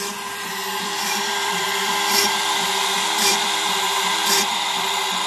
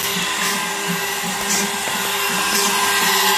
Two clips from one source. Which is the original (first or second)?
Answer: second